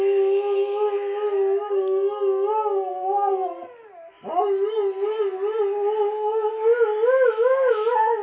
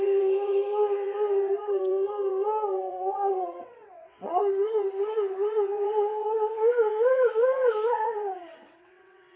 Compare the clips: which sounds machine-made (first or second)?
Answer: second